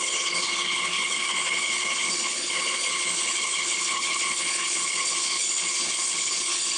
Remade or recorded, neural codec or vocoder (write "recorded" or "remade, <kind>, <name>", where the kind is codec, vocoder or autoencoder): remade, codec, HILCodec